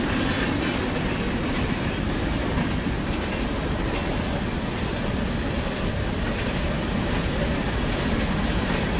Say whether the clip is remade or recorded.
recorded